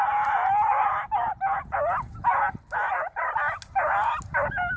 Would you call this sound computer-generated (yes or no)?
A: no